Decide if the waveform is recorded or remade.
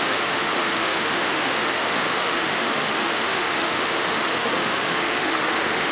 remade